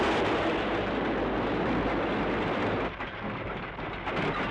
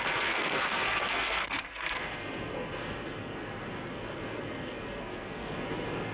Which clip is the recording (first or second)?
first